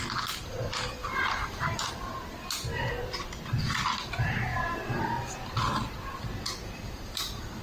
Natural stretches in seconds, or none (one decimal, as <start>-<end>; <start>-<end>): 0.0-1.0; 1.9-7.6